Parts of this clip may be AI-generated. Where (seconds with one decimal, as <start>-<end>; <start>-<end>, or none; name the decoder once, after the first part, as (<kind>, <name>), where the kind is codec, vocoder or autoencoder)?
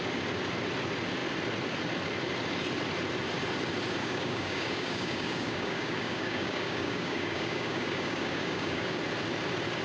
4.0-9.0 (codec, DAC)